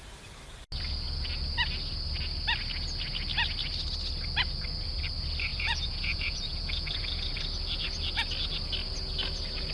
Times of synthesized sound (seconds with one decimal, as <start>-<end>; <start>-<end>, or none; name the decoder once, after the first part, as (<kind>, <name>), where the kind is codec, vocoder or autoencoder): 5.5-7.2 (vocoder, Vocos)